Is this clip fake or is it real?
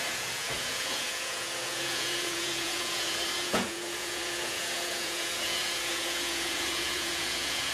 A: fake